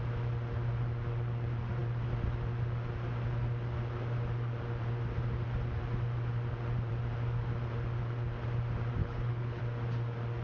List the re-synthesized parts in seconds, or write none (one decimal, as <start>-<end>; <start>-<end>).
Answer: 9.0-9.6